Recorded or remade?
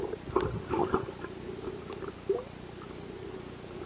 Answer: recorded